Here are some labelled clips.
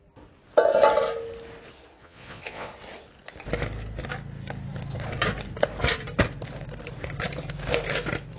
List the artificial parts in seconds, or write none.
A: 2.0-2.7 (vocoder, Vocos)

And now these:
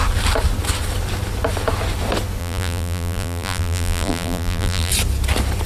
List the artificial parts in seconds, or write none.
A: 2.4-4.9 (vocoder, BigVGAN v2)

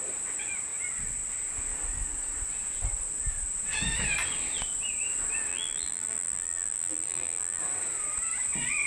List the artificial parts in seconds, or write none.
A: 5.5-7.6 (vocoder, BigVGAN v2)

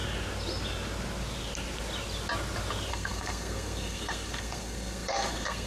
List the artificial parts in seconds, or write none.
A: 2.9-5.7 (codec, SNAC)

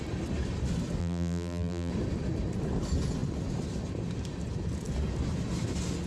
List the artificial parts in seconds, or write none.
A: 1.0-1.9 (vocoder, BigVGAN v2)

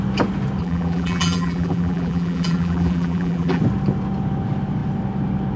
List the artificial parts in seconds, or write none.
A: 0.6-3.6 (vocoder, BigVGAN v2)

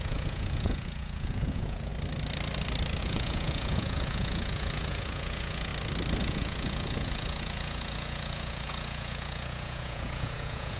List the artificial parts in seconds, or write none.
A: 0.0-1.9 (vocoder, Vocos); 3.0-5.7; 6.2-10.8